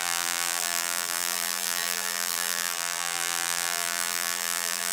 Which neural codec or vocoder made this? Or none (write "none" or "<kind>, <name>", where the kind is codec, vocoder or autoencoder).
vocoder, BigVGAN v2